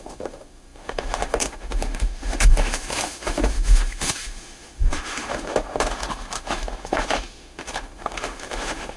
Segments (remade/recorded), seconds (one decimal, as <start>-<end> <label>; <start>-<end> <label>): 0.0-9.0 remade